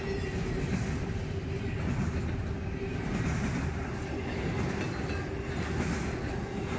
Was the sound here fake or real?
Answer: real